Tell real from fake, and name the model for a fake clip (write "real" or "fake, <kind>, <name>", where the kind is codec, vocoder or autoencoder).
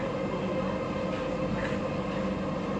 real